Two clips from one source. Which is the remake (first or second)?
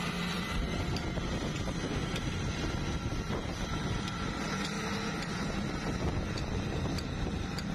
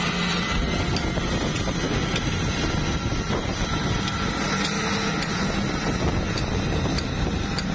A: first